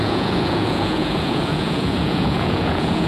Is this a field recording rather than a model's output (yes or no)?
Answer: no